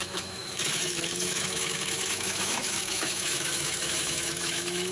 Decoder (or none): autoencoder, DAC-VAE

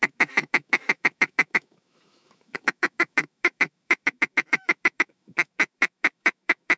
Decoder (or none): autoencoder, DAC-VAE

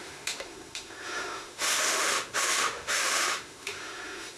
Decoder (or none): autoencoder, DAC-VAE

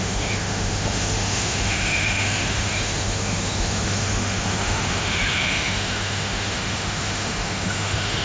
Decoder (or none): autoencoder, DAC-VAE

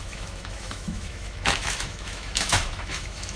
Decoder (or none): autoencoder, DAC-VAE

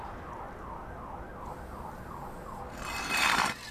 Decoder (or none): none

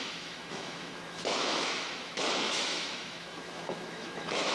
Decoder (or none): autoencoder, DAC-VAE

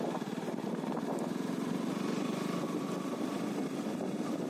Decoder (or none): none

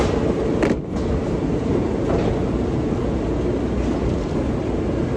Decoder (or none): none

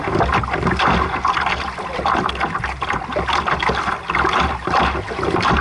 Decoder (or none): none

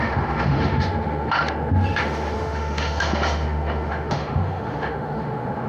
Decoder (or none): autoencoder, DAC-VAE